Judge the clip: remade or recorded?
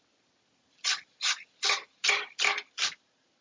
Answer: recorded